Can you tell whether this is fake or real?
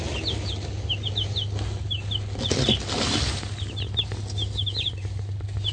real